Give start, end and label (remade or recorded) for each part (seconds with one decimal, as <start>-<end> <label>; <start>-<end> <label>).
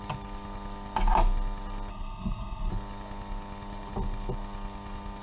0.0-1.9 recorded; 1.9-2.7 remade; 2.7-5.2 recorded